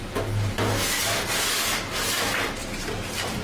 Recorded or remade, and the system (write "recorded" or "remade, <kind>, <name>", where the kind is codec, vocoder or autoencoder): recorded